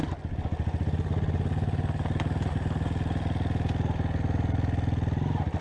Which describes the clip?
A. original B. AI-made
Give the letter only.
A